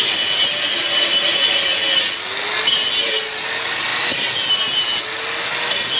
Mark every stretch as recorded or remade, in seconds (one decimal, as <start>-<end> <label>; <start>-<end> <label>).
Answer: 0.0-6.0 recorded